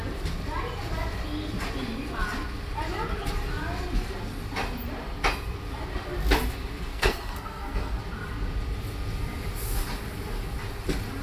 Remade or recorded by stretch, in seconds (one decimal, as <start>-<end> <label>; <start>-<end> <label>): 0.0-6.9 recorded; 6.9-8.0 remade; 8.0-11.2 recorded